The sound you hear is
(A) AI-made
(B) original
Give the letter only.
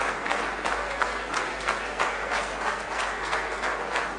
A